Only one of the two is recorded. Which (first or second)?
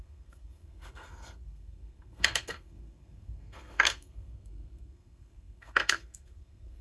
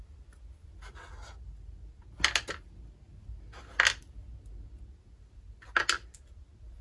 second